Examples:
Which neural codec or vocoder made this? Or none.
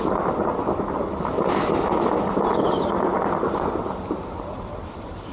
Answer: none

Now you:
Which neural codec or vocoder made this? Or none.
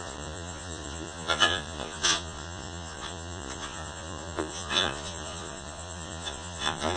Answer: vocoder, Vocos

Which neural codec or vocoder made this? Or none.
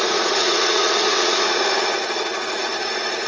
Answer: vocoder, Vocos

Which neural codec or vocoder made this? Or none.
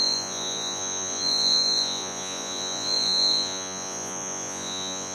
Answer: vocoder, Vocos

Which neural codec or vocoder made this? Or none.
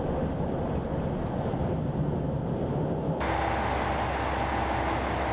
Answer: none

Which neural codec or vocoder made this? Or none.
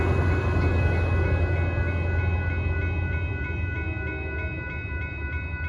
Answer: none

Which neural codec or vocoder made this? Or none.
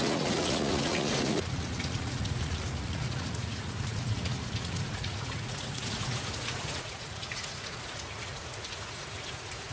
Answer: vocoder, Vocos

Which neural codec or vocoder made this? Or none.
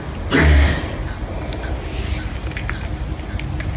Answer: none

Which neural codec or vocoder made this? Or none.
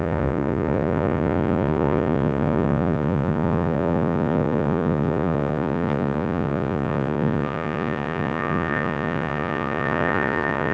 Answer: vocoder, Vocos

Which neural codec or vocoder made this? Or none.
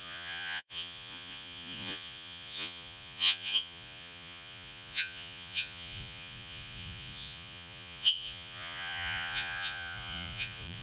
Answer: vocoder, Vocos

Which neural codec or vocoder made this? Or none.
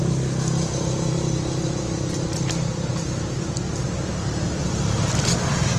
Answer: none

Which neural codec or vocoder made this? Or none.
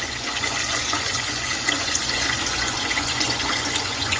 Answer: vocoder, Vocos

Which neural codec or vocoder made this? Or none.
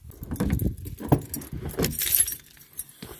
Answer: none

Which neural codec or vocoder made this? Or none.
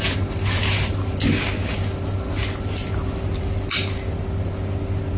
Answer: none